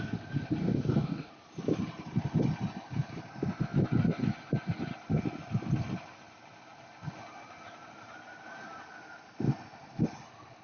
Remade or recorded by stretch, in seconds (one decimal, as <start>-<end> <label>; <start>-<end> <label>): 0.0-0.6 recorded; 0.6-1.3 remade; 1.3-10.6 recorded